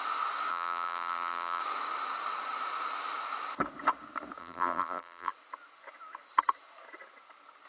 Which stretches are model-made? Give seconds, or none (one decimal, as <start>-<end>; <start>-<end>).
0.5-1.6; 4.4-5.3